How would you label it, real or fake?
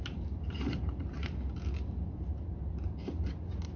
real